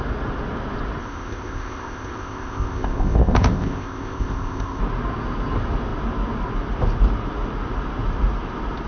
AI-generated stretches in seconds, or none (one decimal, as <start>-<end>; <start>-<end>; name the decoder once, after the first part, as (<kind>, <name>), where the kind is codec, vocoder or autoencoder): 1.0-4.8 (codec, ZipCodec)